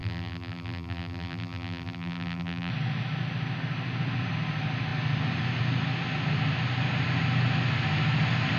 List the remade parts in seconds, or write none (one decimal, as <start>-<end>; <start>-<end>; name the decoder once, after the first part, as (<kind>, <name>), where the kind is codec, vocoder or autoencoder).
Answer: 0.0-2.7 (vocoder, BigVGAN v2)